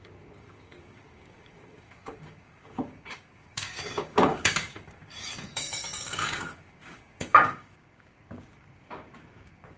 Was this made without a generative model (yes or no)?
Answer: no